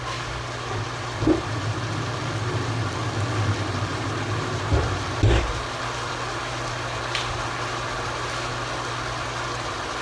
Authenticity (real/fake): real